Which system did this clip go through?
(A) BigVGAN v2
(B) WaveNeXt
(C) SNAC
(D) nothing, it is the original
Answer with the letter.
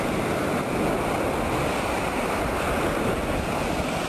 D